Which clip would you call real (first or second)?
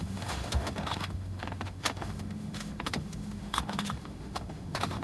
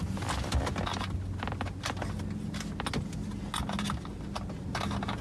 second